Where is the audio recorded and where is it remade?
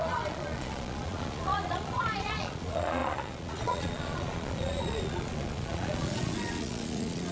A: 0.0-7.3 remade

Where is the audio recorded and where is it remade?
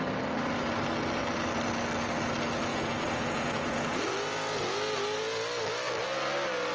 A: 0.0-2.7 recorded; 2.7-4.0 remade; 4.0-6.7 recorded